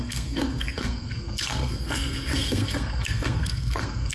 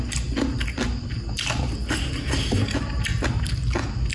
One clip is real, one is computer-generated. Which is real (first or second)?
second